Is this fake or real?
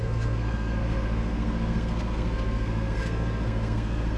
fake